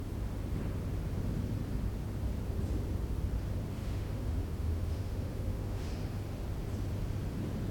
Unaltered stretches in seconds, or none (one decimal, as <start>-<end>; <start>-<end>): 0.0-3.8; 5.9-7.7